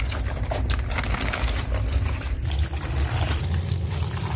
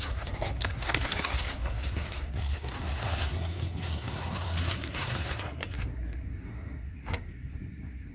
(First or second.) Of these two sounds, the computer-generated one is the second